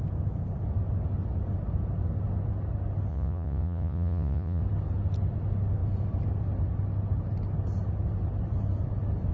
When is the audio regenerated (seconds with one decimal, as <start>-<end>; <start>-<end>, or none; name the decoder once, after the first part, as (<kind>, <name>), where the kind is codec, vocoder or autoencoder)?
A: 3.1-4.6 (vocoder, Vocos)